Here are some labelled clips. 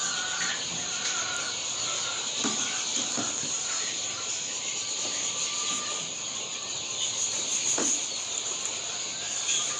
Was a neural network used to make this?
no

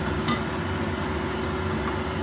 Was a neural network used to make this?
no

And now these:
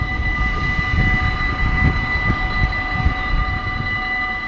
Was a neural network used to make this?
no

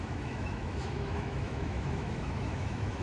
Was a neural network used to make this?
yes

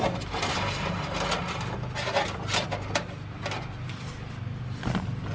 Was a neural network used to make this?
no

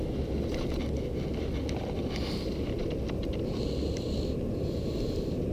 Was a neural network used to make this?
no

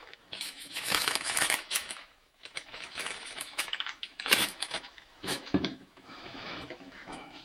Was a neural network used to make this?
yes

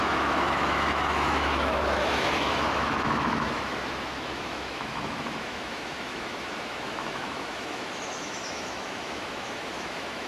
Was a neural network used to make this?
yes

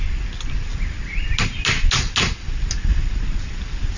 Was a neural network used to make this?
no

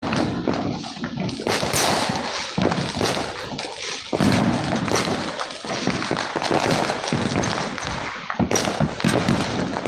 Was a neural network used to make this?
no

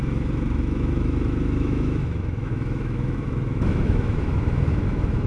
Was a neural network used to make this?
yes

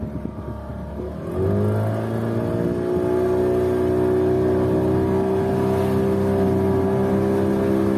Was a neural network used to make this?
no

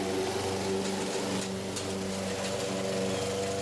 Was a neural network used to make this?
no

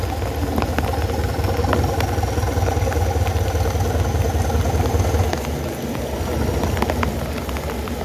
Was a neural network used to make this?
no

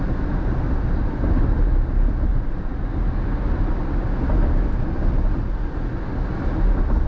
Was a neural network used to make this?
no